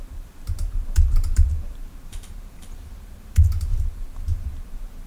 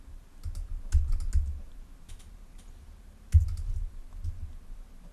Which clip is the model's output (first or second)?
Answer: first